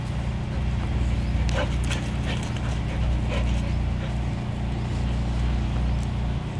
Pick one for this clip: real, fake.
real